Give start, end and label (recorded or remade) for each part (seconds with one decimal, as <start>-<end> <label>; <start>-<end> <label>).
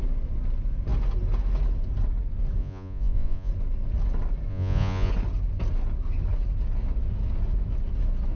0.0-2.6 recorded; 2.6-3.5 remade; 3.5-4.5 recorded; 4.5-5.1 remade; 5.1-8.4 recorded